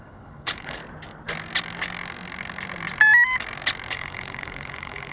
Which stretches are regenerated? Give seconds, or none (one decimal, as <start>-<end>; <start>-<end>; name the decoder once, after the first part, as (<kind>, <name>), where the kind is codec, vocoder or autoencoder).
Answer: 0.0-0.8 (codec, HILCodec); 3.9-5.1